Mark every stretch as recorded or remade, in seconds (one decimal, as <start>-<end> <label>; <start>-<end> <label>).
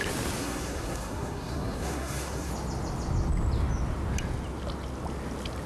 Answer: 0.0-0.4 recorded; 0.4-2.5 remade; 2.5-5.7 recorded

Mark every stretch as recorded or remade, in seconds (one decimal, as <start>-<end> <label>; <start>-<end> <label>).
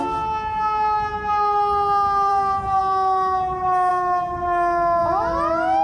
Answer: 0.0-2.3 recorded; 2.3-2.8 remade; 2.8-5.8 recorded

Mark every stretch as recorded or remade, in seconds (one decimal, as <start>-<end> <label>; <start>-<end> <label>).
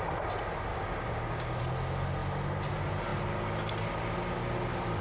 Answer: 0.0-0.7 recorded; 0.7-1.6 remade; 1.6-5.0 recorded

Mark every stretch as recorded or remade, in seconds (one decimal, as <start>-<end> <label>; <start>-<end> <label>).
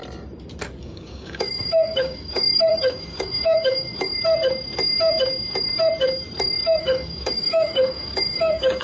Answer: 0.0-0.8 recorded; 0.8-4.1 remade; 4.1-6.8 recorded; 6.8-8.8 remade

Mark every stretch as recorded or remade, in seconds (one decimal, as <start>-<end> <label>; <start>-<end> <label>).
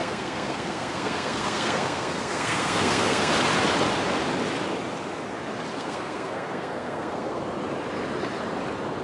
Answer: 0.0-3.3 remade; 3.3-5.7 recorded; 5.7-7.4 remade; 7.4-9.0 recorded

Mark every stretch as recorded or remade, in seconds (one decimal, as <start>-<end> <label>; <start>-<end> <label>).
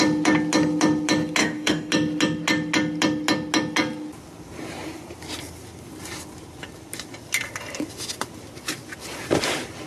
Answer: 0.0-1.4 recorded; 1.4-1.9 remade; 1.9-9.9 recorded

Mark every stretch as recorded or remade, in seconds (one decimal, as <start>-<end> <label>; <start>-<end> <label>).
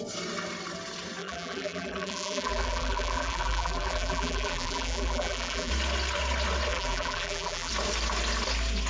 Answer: 0.0-1.2 recorded; 1.2-5.7 remade; 5.7-6.7 recorded; 6.7-7.7 remade; 7.7-8.9 recorded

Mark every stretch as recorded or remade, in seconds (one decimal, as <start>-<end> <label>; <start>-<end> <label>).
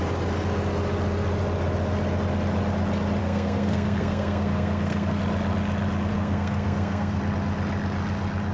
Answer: 0.0-3.2 recorded; 3.2-5.2 remade; 5.2-6.1 recorded; 6.1-7.2 remade; 7.2-8.5 recorded